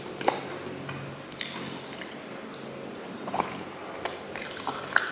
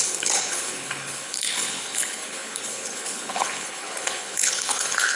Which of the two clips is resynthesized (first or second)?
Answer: second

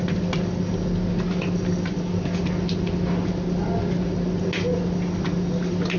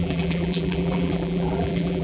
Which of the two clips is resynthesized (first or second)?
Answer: second